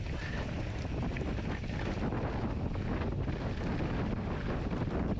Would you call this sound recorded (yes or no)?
yes